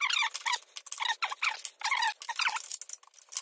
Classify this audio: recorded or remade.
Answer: recorded